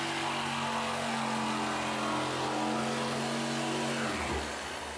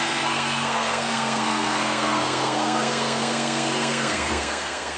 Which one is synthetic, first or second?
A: second